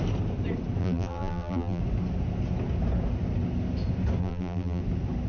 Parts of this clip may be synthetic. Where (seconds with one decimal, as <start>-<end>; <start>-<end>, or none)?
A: 0.8-1.8; 4.2-4.8